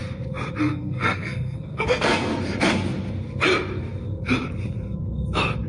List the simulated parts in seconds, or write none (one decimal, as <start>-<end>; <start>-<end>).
0.6-2.3